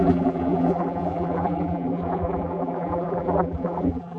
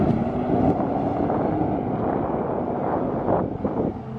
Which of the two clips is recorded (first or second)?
second